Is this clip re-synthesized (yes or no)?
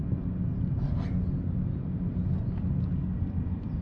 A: no